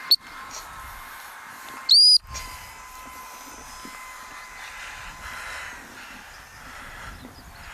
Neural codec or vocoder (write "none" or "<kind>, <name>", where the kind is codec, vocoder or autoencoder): none